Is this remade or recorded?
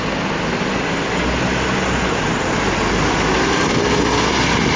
recorded